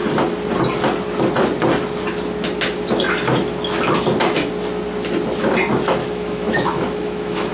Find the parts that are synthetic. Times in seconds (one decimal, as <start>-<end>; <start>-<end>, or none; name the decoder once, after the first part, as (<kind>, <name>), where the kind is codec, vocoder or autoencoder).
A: 6.0-7.5 (autoencoder, DAC-VAE)